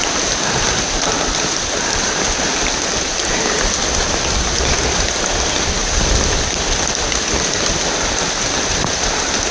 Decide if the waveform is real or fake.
real